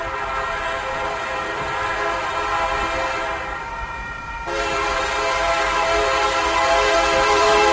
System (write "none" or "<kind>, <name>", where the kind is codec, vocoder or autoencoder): vocoder, BigVGAN v2